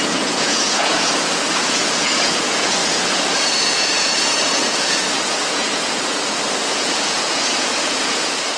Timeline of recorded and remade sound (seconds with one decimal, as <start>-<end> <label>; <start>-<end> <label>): 0.0-8.6 remade